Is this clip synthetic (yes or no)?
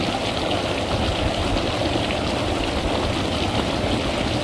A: no